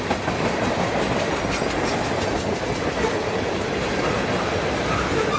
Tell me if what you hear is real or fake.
real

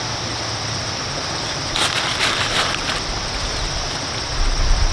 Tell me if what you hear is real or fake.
fake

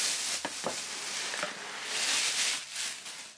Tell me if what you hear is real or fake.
real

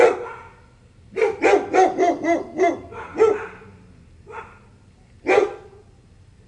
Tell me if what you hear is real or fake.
real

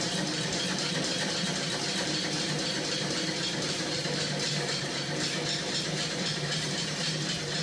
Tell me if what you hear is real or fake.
fake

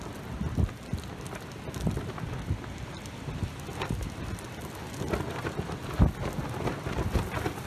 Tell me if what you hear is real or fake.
real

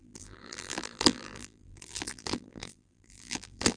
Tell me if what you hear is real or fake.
fake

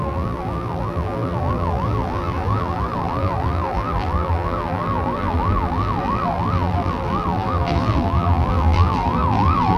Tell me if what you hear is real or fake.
fake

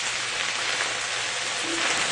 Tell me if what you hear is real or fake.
real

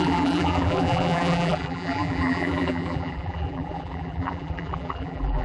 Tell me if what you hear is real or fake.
fake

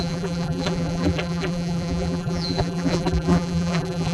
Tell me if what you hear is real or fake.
fake